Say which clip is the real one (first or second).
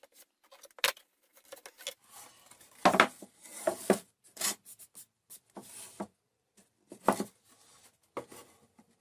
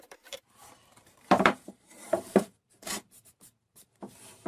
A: first